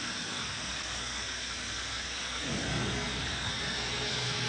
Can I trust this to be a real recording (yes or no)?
no